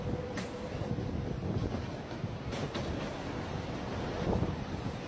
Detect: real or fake real